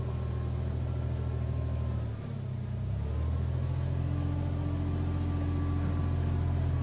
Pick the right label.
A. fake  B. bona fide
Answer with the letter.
B